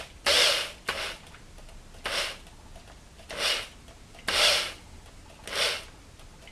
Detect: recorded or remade recorded